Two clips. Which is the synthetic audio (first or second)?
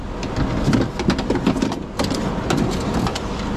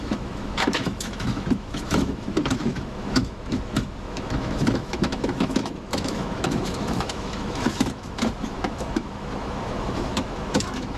second